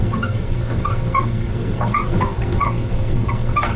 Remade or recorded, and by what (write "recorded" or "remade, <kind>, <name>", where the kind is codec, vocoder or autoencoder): remade, codec, SNAC